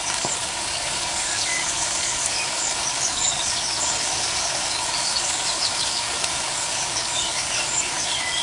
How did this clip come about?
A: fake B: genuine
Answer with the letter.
A